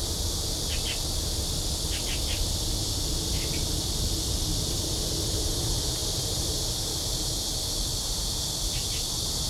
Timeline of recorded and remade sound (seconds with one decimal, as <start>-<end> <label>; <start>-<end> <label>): 0.0-7.9 recorded; 7.9-9.5 remade

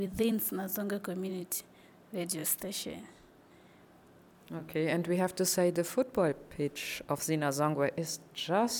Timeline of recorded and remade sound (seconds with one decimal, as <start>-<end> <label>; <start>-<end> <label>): 0.0-0.7 remade; 0.7-1.3 recorded; 1.3-4.6 remade; 4.6-8.4 recorded; 8.4-8.8 remade

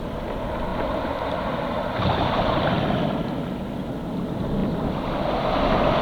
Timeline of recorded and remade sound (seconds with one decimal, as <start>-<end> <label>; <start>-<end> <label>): 0.0-0.7 recorded; 0.7-3.0 remade; 3.0-6.0 recorded

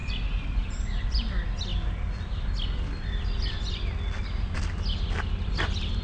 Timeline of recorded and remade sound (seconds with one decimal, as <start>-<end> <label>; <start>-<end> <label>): 0.0-1.2 remade; 1.2-6.0 recorded

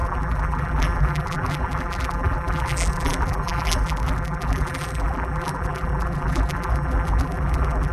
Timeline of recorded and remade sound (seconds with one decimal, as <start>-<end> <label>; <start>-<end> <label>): 0.0-7.9 remade

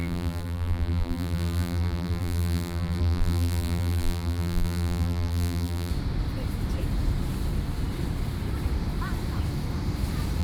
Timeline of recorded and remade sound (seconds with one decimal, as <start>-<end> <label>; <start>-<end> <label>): 0.0-5.9 remade; 5.9-10.4 recorded

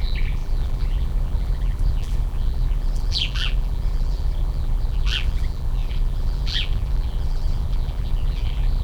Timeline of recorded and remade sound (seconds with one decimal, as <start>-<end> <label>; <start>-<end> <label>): 0.0-8.8 remade

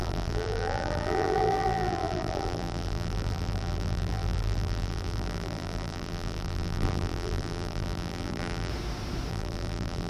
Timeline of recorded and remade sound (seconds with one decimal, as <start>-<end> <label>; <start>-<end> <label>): 0.0-8.7 remade; 8.7-9.3 recorded; 9.3-10.1 remade